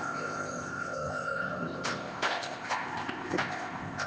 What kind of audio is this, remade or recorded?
remade